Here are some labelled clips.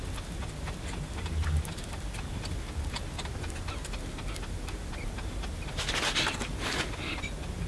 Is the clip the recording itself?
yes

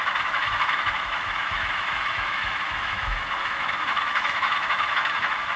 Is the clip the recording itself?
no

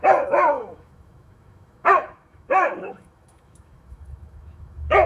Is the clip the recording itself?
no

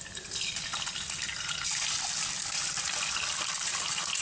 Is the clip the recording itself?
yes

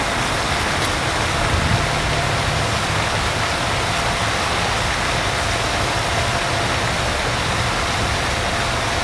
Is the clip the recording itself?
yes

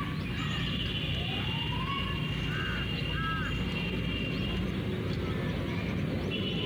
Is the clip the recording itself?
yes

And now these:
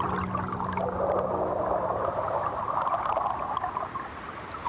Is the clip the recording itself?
yes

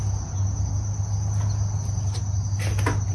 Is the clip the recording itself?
yes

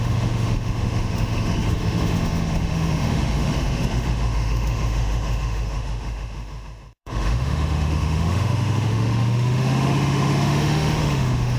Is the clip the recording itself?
no